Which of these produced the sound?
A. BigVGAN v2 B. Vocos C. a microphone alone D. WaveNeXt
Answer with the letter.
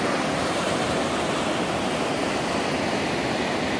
C